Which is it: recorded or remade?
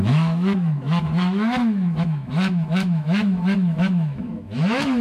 remade